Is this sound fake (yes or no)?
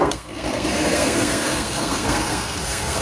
yes